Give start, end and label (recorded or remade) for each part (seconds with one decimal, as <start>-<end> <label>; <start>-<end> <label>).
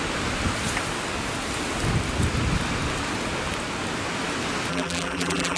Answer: 0.0-4.7 recorded; 4.7-5.6 remade